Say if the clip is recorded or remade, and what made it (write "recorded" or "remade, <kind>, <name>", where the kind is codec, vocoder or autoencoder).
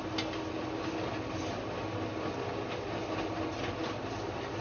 recorded